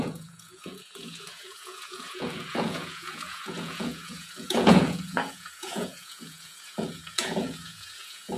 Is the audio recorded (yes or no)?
no